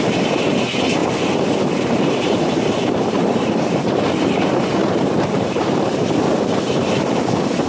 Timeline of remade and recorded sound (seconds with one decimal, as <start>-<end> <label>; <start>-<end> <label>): 0.0-1.0 recorded; 1.0-3.8 remade; 3.8-4.8 recorded; 4.8-7.0 remade; 7.0-7.7 recorded

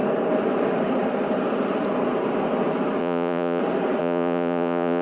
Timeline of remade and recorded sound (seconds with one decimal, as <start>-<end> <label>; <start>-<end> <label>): 0.0-3.0 recorded; 3.0-3.6 remade; 3.6-4.0 recorded; 4.0-5.0 remade

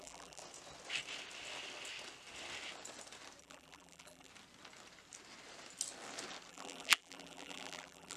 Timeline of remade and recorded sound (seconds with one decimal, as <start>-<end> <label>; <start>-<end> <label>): 0.0-0.4 remade; 0.4-3.4 recorded; 3.4-4.3 remade; 4.3-6.5 recorded; 6.5-8.2 remade